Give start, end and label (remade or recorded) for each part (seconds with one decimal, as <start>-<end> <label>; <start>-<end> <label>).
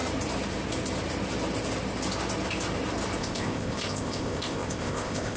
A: 0.0-3.2 recorded; 3.2-5.4 remade